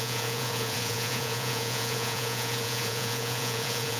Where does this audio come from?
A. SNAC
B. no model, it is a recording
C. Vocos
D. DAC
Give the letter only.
C